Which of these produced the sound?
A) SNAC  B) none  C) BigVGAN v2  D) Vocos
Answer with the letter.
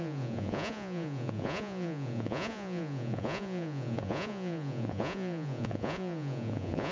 D